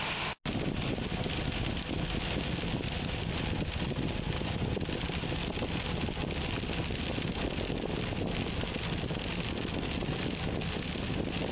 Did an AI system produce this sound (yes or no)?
no